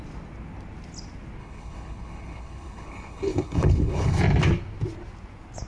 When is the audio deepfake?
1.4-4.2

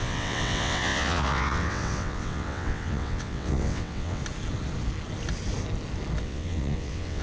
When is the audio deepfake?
0.0-4.2; 6.2-7.2